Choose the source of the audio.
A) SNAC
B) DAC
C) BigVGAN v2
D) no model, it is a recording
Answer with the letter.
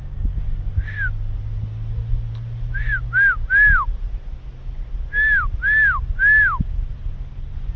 D